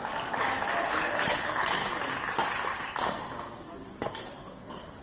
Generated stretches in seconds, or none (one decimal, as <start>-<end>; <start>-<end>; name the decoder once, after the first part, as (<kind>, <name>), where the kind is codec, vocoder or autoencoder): 0.8-1.8 (codec, HILCodec); 4.2-5.0